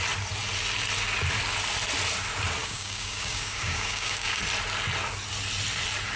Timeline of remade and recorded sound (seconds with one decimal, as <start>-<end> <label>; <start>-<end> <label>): 0.0-2.6 recorded; 2.6-4.4 remade; 4.4-6.2 recorded